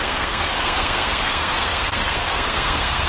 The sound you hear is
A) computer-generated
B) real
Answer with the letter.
A